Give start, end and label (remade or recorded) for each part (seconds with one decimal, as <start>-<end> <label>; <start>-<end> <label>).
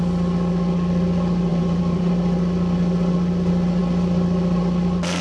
0.0-1.5 recorded; 1.5-2.1 remade; 2.1-5.2 recorded